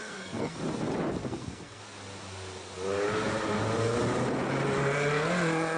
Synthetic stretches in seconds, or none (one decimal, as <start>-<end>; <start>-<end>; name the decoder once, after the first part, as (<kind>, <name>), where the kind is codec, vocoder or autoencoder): 0.0-0.6 (codec, SNAC); 1.2-1.8